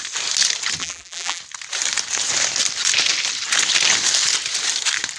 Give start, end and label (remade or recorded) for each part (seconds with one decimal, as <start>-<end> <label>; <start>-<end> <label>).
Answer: 0.0-0.8 recorded; 0.8-1.4 remade; 1.4-5.2 recorded